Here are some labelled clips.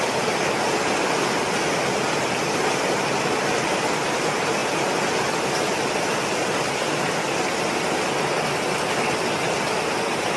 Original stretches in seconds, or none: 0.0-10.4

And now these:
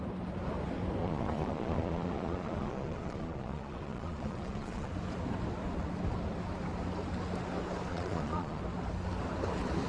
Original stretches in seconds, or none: 0.0-1.0; 4.9-7.9; 8.6-9.9

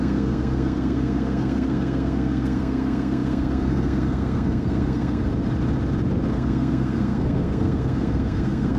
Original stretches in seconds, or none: 5.3-6.3

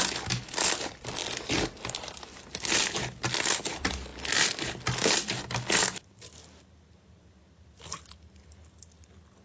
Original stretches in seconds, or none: 0.0-9.4

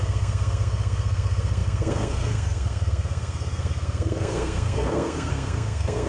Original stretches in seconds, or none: none

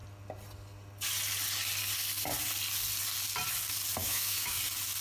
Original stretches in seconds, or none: 0.0-4.0; 4.6-5.0